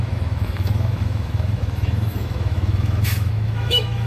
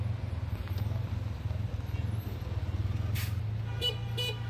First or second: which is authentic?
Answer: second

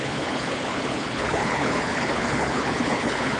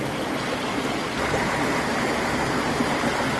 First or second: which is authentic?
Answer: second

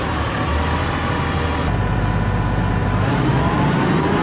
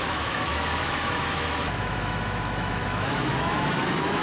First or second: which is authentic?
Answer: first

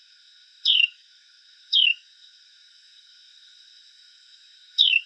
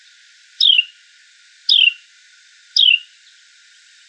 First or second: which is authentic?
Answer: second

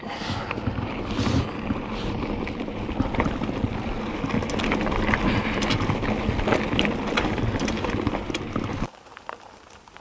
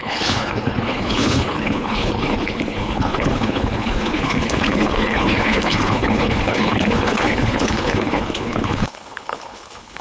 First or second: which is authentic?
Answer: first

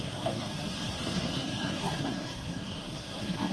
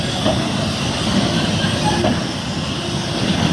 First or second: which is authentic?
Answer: second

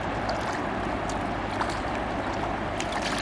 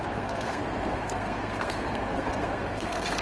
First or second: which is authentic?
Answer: first